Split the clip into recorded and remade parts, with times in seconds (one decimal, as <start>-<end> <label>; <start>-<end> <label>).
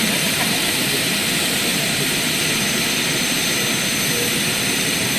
0.0-1.7 remade; 1.7-4.8 recorded; 4.8-5.2 remade